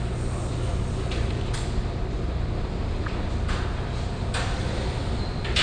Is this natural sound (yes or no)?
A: yes